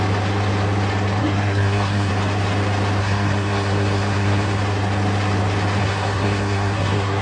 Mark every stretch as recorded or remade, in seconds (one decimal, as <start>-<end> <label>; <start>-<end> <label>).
0.0-1.2 recorded; 1.2-2.1 remade; 2.1-3.0 recorded; 3.0-4.6 remade; 4.6-5.8 recorded; 5.8-7.2 remade